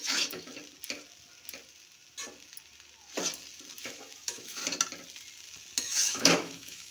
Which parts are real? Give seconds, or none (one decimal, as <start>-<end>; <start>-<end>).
0.5-3.8; 4.6-5.8